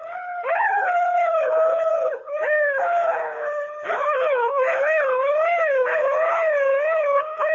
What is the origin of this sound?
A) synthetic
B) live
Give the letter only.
A